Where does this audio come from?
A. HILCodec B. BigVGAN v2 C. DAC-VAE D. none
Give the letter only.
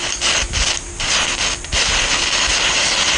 D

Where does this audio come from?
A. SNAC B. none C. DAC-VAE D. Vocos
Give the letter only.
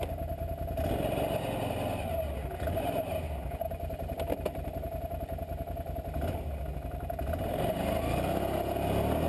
B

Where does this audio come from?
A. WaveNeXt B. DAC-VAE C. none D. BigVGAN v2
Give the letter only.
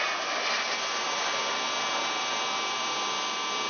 C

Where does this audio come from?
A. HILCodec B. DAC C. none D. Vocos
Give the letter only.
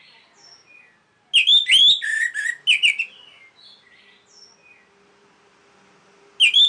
C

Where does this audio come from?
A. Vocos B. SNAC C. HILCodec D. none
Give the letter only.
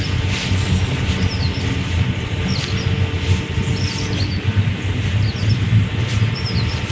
D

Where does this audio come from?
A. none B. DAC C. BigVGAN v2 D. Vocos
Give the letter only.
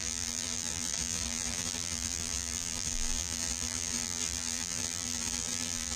C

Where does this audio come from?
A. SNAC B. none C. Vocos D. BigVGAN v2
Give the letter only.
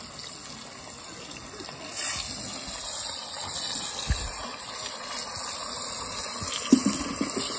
B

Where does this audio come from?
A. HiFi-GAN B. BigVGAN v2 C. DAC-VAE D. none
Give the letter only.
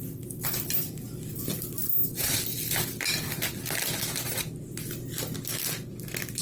D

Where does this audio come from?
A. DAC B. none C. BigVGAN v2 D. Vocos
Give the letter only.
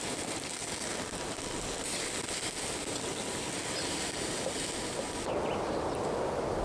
B